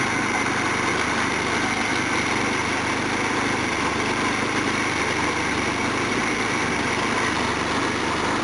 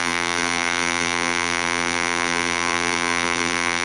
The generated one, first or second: second